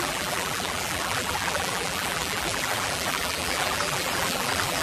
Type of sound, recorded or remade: remade